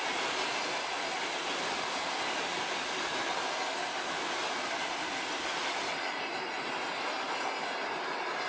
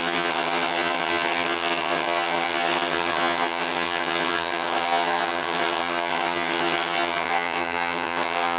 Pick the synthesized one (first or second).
second